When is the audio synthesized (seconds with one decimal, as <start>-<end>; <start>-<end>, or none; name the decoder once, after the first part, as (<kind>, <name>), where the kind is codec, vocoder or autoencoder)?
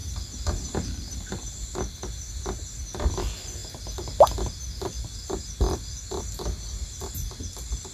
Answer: none